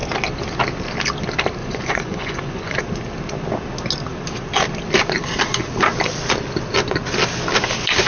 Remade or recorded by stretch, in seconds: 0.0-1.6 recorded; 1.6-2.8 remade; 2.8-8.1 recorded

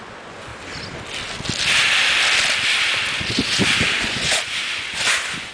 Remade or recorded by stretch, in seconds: 0.0-0.5 remade; 0.5-3.2 recorded; 3.2-5.5 remade

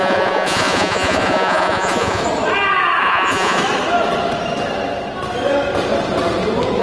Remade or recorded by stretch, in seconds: 0.0-2.2 remade; 2.2-3.0 recorded; 3.0-3.6 remade; 3.6-6.8 recorded

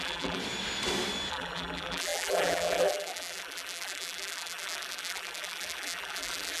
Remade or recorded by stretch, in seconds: 0.0-0.4 remade; 0.4-1.3 recorded; 1.3-6.6 remade